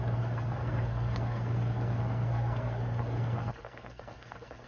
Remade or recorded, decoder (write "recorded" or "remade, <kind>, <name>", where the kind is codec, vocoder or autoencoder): remade, codec, SNAC